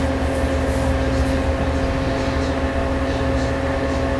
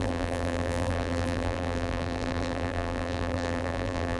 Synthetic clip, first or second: second